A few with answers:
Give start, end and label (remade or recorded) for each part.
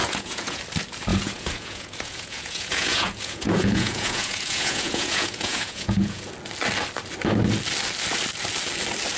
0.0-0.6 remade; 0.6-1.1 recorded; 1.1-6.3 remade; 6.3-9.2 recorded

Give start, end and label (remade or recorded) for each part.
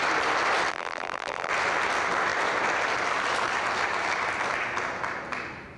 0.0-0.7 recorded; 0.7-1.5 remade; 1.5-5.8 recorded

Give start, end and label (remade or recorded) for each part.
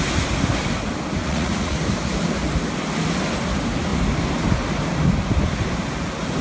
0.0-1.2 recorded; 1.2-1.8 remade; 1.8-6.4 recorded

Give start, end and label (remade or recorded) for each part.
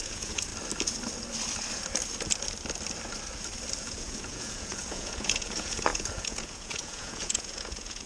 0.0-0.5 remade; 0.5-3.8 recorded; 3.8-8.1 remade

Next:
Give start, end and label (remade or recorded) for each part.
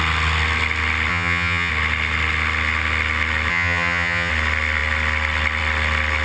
0.0-1.1 recorded; 1.1-1.7 remade; 1.7-3.5 recorded; 3.5-4.3 remade; 4.3-6.2 recorded